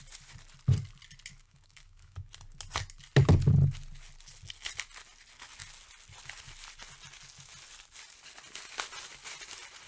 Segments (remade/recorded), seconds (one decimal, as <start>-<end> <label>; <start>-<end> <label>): 0.0-1.3 recorded; 1.3-2.3 remade; 2.3-9.9 recorded